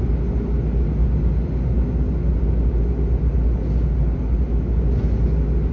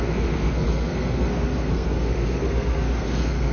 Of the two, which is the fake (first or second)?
second